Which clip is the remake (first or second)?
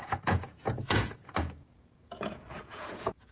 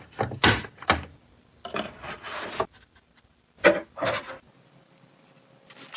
first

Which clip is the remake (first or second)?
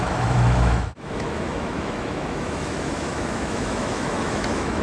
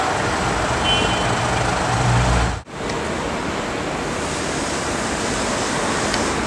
first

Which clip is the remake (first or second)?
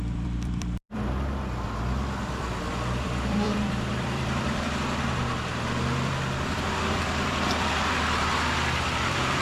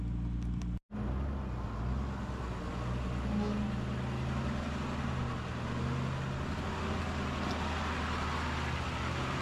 first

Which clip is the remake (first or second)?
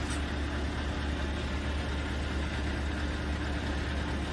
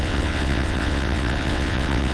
second